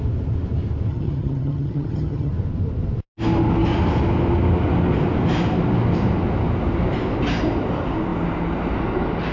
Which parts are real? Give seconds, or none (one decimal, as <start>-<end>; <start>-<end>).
0.0-0.9; 2.3-9.3